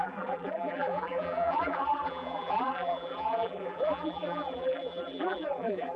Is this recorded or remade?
remade